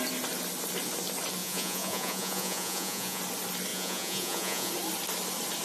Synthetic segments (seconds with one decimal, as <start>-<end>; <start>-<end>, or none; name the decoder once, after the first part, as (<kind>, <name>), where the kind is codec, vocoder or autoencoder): 1.4-3.2 (vocoder, Vocos); 3.7-4.7

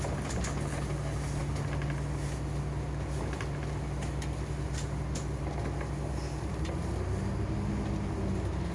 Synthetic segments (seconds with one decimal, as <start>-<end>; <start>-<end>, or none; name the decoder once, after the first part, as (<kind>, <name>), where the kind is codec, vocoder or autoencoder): none